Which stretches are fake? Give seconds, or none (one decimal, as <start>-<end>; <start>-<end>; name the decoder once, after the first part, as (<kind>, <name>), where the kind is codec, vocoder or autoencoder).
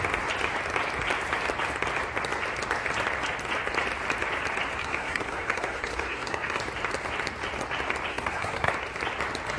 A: 4.8-6.6 (codec, SNAC); 8.1-8.7